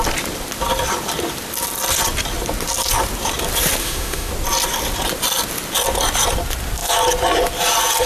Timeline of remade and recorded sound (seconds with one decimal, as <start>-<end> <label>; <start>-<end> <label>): 0.0-3.8 recorded; 3.8-4.3 remade; 4.3-8.1 recorded